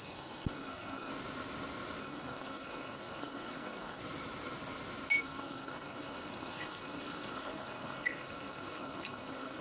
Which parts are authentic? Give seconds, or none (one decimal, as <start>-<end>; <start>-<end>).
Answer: 1.1-2.0; 4.0-5.2